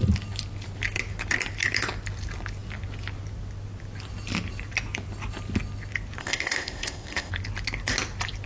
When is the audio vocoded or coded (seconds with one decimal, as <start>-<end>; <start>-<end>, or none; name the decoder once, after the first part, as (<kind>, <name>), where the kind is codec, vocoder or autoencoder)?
6.2-7.3 (codec, ZipCodec)